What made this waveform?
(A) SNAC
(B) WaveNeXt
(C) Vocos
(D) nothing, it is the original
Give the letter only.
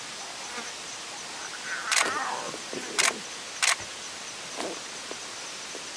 D